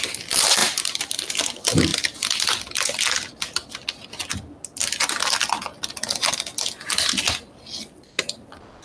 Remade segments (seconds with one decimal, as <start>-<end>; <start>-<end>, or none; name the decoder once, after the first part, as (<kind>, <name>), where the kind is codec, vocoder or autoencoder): 0.6-1.3 (vocoder, BigVGAN v2)